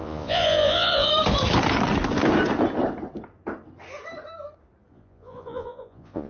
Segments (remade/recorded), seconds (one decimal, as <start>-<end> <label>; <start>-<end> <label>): 0.0-1.1 remade; 1.1-4.9 recorded; 4.9-6.3 remade